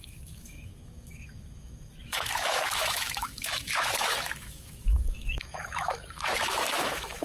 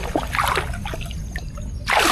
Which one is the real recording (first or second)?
second